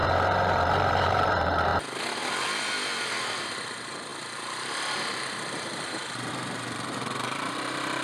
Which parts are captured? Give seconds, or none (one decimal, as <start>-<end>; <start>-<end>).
1.7-3.2